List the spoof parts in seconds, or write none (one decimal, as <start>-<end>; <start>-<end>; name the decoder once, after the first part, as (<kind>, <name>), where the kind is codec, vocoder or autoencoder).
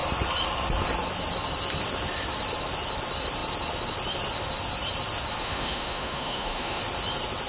5.4-6.8 (autoencoder, DAC-VAE)